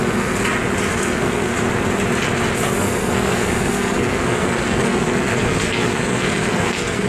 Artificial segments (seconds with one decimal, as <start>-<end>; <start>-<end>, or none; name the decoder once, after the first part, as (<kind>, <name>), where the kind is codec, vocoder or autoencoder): 0.0-0.4 (codec, SNAC); 0.9-1.5; 2.8-7.1